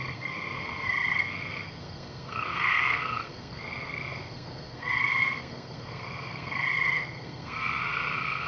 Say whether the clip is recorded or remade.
remade